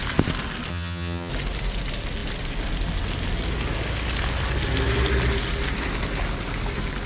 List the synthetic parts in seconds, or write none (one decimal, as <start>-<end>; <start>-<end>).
0.7-1.3